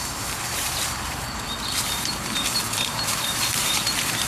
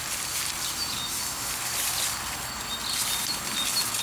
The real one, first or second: second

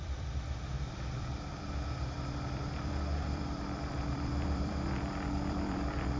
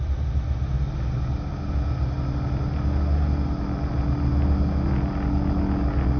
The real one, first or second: second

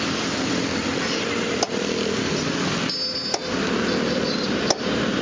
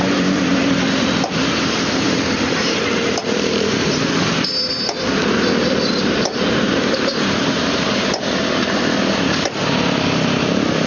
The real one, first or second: first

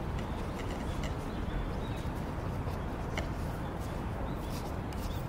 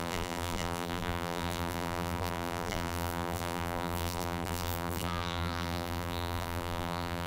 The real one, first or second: first